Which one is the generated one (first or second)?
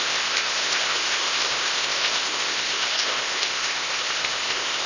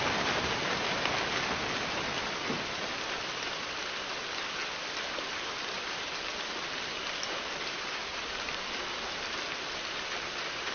first